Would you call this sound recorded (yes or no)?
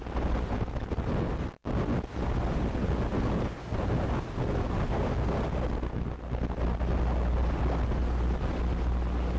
yes